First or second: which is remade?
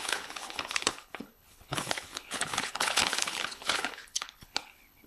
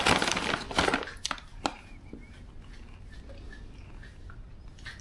first